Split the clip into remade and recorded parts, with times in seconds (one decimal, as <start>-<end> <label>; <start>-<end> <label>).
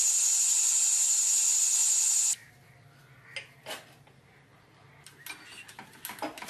0.0-6.5 recorded